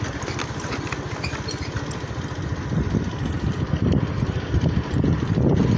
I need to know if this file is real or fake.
fake